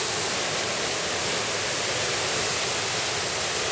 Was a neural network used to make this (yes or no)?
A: no